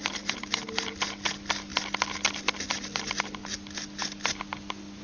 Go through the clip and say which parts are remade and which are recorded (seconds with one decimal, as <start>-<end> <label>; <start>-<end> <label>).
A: 0.0-5.0 recorded